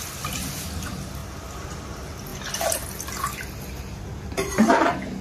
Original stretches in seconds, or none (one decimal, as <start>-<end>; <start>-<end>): 0.0-5.2